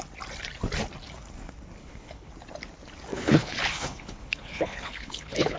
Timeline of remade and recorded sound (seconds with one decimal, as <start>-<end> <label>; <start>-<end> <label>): 0.0-1.8 recorded; 1.8-2.3 remade; 2.3-3.1 recorded; 3.1-5.6 remade